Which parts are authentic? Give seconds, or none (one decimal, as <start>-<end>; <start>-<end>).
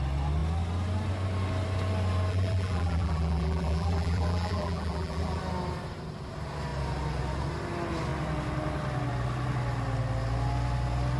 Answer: 0.0-2.3; 5.4-11.2